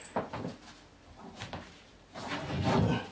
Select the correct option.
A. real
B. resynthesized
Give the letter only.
A